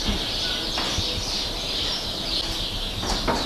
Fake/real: real